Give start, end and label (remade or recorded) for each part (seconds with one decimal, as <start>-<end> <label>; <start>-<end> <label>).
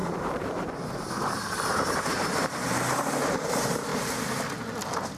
0.0-3.9 remade; 3.9-5.2 recorded